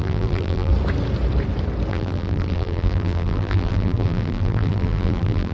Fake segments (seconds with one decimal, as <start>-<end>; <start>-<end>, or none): 0.0-0.7; 1.9-5.5